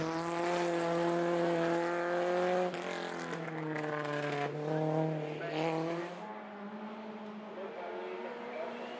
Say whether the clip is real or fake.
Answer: real